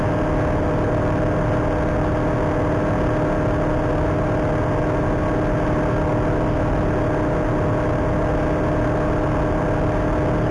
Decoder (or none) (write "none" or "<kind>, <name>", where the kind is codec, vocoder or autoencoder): none